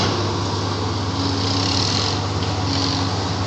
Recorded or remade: recorded